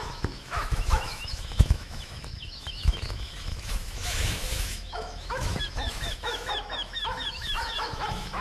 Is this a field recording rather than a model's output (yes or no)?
no